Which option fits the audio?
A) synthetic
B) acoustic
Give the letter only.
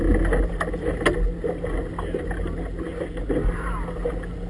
B